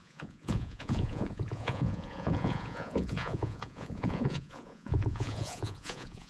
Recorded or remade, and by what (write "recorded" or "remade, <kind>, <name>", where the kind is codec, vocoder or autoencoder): remade, vocoder, Vocos